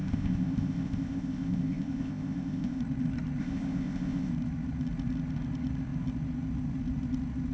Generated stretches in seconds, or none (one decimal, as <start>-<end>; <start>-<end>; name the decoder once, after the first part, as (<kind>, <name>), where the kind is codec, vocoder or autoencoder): 0.0-2.8 (codec, ZipCodec); 3.4-4.3